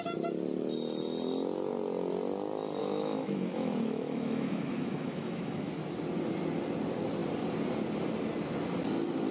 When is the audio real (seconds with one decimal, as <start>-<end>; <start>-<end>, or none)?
0.0-2.8; 5.7-9.3